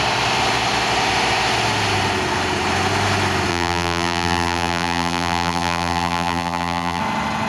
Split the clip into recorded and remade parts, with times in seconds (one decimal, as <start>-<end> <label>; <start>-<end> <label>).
0.0-3.5 recorded; 3.5-7.0 remade; 7.0-7.5 recorded